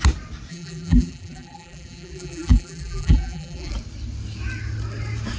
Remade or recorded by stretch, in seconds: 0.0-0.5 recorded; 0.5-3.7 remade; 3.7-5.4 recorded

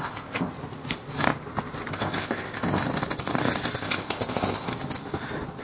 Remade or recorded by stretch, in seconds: 0.0-0.5 remade; 0.5-1.9 recorded; 1.9-2.8 remade; 2.8-3.8 recorded; 3.8-4.7 remade; 4.7-5.6 recorded